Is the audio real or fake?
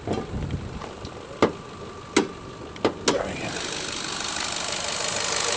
real